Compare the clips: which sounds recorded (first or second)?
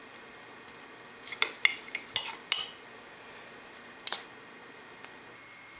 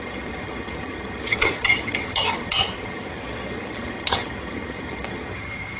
first